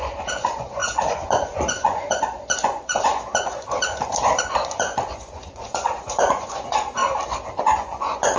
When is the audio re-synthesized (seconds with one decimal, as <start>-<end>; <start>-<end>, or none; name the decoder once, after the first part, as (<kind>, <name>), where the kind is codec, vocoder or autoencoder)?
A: 0.0-7.0 (vocoder, Vocos); 7.6-8.4